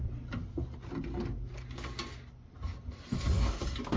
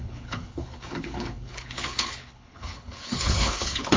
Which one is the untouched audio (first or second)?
first